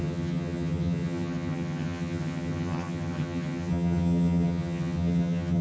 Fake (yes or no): yes